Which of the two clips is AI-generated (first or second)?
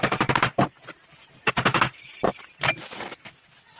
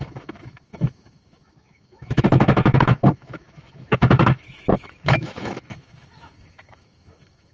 second